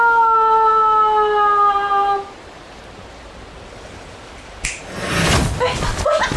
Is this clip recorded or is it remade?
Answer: recorded